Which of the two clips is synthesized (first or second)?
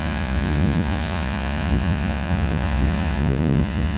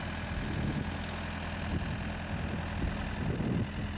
first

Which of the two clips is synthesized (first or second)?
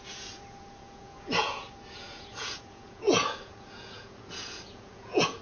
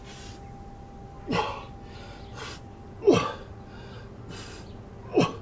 first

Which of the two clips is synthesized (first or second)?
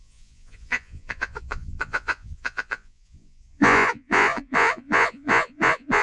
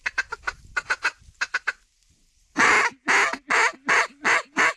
first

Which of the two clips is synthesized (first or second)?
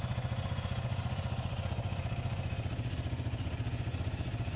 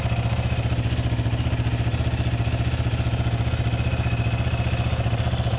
first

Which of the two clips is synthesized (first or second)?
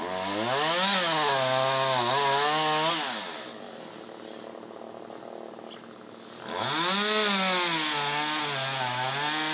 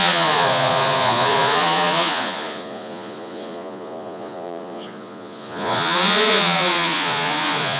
second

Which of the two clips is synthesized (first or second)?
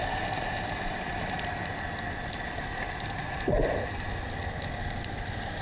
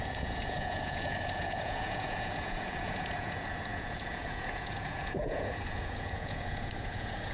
second